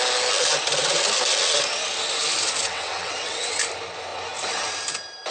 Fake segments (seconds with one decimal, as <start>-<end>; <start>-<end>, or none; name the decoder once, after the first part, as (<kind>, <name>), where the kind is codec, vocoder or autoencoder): 2.6-3.6 (vocoder, WaveNeXt)